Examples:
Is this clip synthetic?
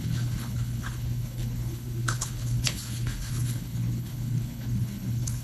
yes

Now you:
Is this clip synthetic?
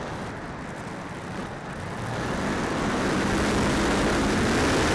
no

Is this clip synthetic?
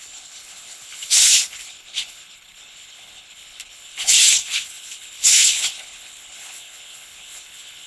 yes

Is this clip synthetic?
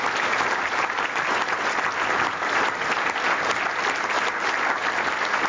no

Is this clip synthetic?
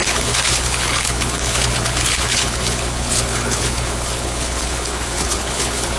yes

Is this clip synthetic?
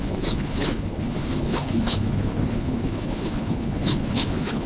yes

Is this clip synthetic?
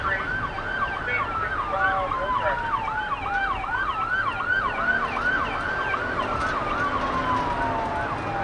no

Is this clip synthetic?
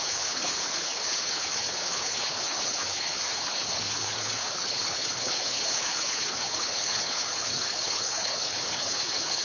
yes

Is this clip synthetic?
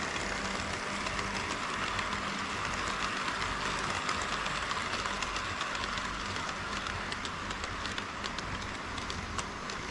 no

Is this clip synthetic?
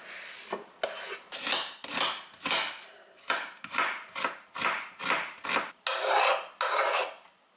no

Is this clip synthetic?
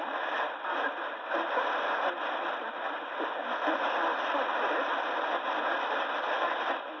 no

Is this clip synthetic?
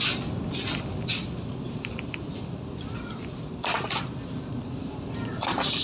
no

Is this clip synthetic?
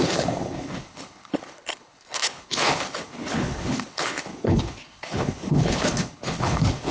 yes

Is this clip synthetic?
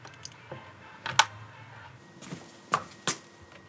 no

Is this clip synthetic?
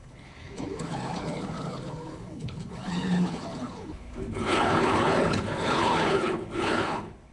yes